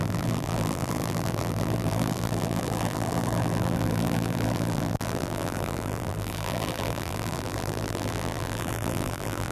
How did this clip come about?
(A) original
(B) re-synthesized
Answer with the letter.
B